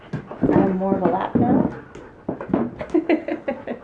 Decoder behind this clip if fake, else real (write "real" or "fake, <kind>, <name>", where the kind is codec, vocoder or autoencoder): real